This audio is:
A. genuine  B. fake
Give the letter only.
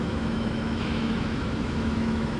B